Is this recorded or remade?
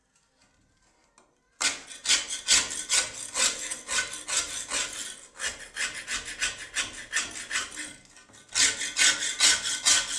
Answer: recorded